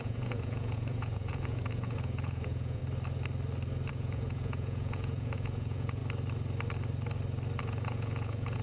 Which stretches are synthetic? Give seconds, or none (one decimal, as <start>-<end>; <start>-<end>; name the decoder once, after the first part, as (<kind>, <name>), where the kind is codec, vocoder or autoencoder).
0.0-2.8 (vocoder, Vocos); 3.9-6.0; 7.6-8.6